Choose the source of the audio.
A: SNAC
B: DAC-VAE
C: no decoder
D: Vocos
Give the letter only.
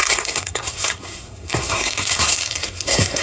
A